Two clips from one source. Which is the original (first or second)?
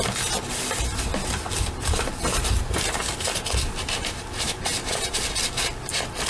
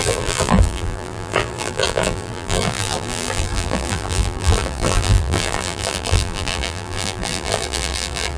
first